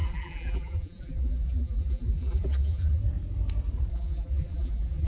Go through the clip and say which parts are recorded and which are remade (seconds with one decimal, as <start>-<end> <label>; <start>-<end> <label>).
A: 0.0-3.0 remade; 3.0-3.9 recorded; 3.9-5.1 remade